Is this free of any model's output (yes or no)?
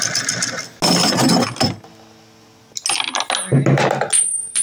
yes